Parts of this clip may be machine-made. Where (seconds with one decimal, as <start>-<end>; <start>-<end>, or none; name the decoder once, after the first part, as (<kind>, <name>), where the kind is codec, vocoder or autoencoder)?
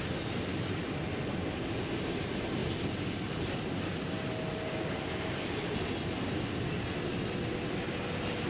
none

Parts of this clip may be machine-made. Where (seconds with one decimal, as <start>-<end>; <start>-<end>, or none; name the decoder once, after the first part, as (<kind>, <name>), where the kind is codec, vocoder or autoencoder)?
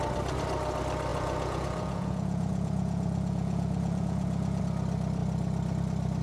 1.1-4.6 (vocoder, Vocos)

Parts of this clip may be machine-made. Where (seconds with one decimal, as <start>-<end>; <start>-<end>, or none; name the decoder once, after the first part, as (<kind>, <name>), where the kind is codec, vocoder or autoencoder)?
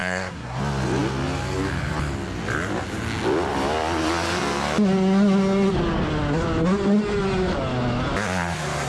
0.0-0.6 (codec, SNAC)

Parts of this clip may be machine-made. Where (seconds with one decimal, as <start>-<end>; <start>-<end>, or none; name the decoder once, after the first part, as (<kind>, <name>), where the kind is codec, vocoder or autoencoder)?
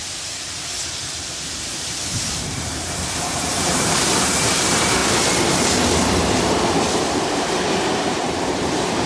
0.0-5.0 (vocoder, BigVGAN v2); 6.4-9.1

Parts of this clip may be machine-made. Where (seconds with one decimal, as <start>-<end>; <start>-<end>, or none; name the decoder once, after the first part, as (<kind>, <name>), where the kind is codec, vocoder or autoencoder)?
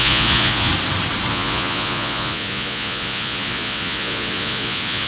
0.0-0.7 (vocoder, Vocos); 1.3-5.1